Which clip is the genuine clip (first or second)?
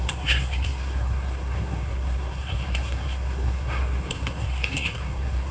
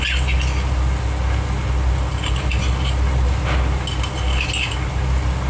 second